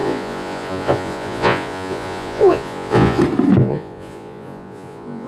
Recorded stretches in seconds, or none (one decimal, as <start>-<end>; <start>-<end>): 3.2-3.6